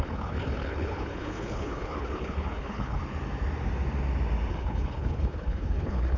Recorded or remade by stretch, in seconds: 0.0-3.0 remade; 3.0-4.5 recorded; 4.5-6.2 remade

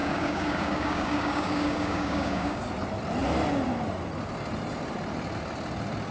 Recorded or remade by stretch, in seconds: 0.0-2.6 remade; 2.6-6.1 recorded

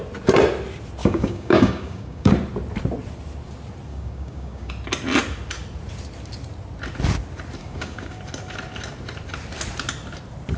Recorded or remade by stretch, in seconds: 0.0-1.0 recorded; 1.0-2.3 remade; 2.3-3.9 recorded; 3.9-4.7 remade; 4.7-7.6 recorded; 7.6-8.2 remade; 8.2-10.6 recorded

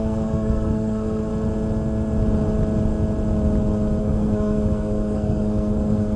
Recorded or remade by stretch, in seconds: 0.0-1.3 remade; 1.3-4.0 recorded; 4.0-6.2 remade

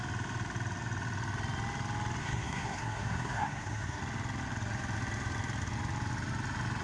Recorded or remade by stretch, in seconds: 0.0-2.2 recorded; 2.2-4.0 remade; 4.0-6.8 recorded

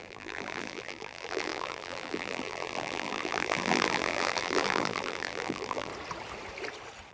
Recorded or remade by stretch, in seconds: 0.0-5.9 remade; 5.9-7.1 recorded

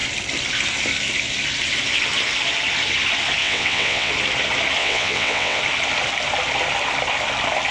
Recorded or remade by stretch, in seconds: 0.0-3.4 recorded; 3.4-4.1 remade; 4.1-4.8 recorded; 4.8-5.6 remade; 5.6-7.7 recorded